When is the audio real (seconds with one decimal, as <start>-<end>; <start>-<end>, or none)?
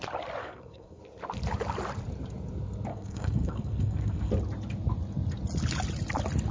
0.0-0.4; 1.0-2.9; 4.3-6.5